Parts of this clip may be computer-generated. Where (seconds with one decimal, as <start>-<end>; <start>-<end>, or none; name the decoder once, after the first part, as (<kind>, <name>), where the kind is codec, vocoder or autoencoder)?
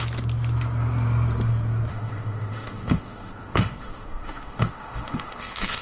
1.9-5.8 (autoencoder, DAC-VAE)